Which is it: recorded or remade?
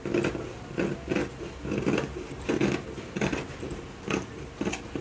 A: recorded